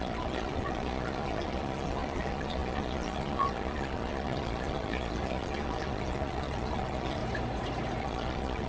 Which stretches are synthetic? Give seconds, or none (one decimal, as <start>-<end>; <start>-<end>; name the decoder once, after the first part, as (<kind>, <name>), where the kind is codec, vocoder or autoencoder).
0.0-7.2 (vocoder, Vocos); 8.0-8.7